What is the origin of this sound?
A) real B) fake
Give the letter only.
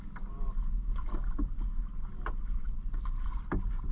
A